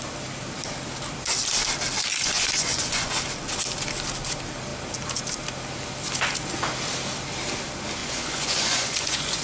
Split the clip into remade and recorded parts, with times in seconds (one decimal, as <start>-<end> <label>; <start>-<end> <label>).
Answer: 0.0-2.1 recorded; 2.1-3.1 remade; 3.1-8.0 recorded; 8.0-9.4 remade